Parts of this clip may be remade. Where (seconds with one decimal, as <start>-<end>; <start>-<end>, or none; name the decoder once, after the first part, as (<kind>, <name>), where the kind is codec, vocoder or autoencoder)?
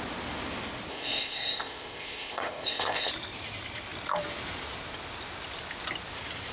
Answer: 0.9-3.1 (codec, ZipCodec)